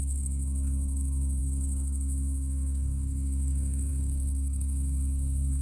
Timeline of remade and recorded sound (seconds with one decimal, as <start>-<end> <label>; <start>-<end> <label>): 0.0-5.6 remade